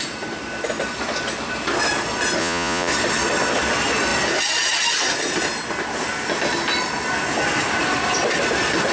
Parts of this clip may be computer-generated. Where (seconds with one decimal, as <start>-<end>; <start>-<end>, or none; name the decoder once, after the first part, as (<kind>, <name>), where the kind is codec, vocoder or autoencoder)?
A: 2.4-2.9 (vocoder, Vocos)